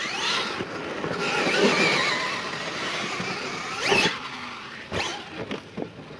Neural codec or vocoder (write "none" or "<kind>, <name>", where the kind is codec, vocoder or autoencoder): none